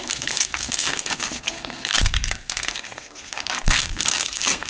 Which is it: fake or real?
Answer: fake